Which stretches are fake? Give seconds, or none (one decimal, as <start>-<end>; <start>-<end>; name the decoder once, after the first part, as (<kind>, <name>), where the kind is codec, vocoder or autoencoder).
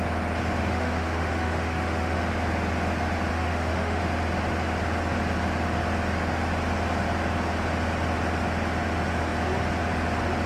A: 0.6-2.2 (autoencoder, DAC-VAE); 3.3-4.0